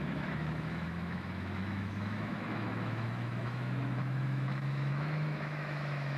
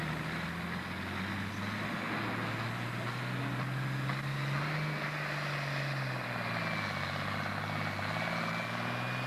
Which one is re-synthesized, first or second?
first